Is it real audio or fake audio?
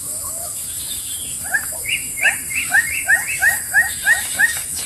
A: fake